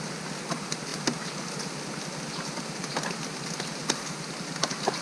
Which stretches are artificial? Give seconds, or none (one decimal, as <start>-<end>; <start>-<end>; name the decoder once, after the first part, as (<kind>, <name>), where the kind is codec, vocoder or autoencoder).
none